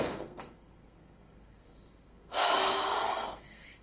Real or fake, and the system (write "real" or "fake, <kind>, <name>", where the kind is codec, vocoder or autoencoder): fake, codec, SNAC